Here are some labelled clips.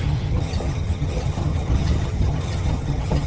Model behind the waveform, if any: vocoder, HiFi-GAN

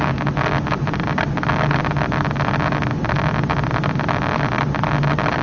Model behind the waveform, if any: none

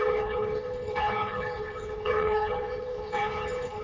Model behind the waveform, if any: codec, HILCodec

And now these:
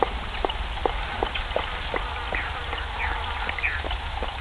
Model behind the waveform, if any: none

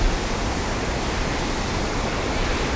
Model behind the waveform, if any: none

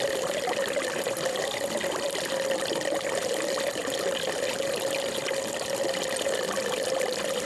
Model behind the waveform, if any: none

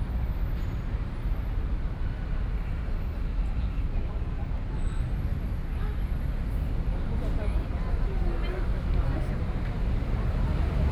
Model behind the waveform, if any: none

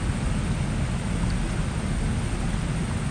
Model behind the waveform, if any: none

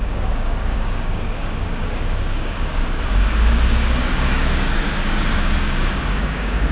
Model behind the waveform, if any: codec, DAC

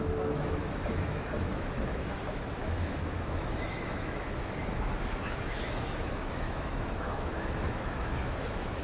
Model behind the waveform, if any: autoencoder, DAC-VAE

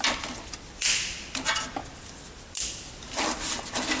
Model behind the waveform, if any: vocoder, BigVGAN v2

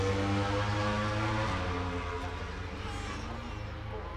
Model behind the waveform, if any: none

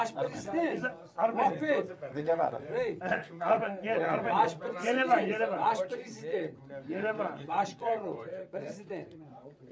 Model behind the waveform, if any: vocoder, WaveNeXt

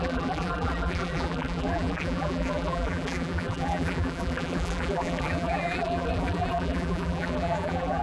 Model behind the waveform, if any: vocoder, BigVGAN v2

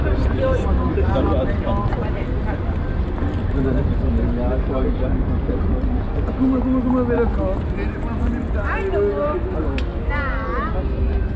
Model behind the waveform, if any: none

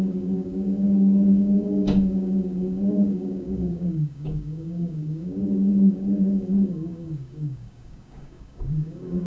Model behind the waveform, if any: codec, DAC